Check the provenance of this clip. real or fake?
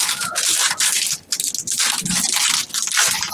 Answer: real